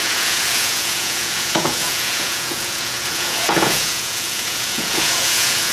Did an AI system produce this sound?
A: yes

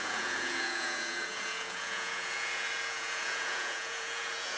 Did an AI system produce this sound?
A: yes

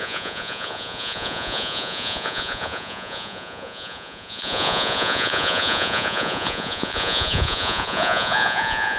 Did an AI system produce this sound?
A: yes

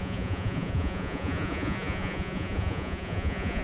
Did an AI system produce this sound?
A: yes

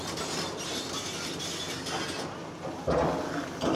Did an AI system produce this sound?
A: no